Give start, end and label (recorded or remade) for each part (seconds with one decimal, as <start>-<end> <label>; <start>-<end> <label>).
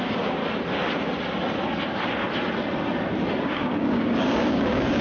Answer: 0.0-0.4 remade; 0.4-3.4 recorded; 3.4-5.0 remade